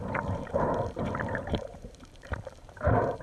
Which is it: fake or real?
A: fake